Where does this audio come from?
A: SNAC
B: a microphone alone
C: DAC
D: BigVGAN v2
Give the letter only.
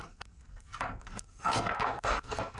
A